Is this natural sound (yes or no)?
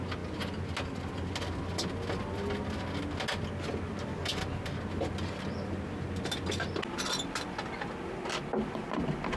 yes